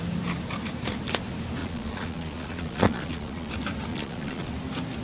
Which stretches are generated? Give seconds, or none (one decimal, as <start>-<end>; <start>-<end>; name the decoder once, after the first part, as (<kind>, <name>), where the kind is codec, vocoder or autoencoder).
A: 1.6-3.5 (vocoder, Vocos); 3.9-4.5